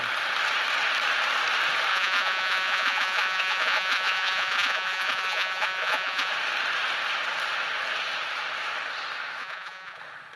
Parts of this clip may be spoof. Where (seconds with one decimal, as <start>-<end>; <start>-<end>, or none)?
1.9-6.3; 9.4-10.0